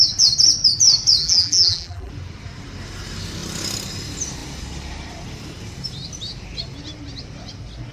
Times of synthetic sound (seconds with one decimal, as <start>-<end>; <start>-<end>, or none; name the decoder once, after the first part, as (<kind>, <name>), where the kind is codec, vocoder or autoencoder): 1.2-2.1 (vocoder, BigVGAN v2)